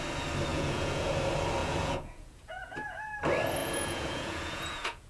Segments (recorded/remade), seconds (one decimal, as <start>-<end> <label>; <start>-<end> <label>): 0.0-0.5 recorded; 0.5-1.1 remade; 1.1-1.6 recorded; 1.6-3.1 remade; 3.1-3.6 recorded; 3.6-5.1 remade